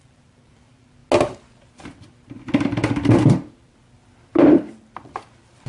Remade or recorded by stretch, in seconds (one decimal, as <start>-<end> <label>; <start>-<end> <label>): 0.0-1.0 remade; 1.0-4.3 recorded; 4.3-5.7 remade